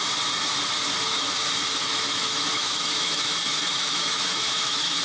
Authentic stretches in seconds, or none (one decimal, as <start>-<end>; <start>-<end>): 0.0-1.9